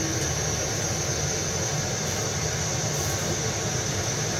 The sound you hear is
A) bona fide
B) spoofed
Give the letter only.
A